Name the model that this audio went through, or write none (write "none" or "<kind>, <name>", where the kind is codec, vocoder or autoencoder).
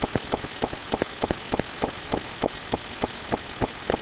none